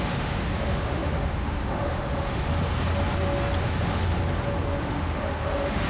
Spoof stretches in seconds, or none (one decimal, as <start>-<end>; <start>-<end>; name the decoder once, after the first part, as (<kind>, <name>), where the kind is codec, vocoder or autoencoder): 0.0-2.5 (autoencoder, DAC-VAE); 3.6-4.1; 4.8-5.9